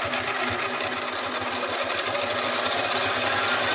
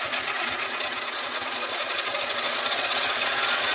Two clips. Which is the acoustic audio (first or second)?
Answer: first